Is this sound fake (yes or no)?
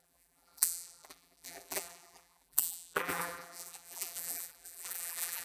yes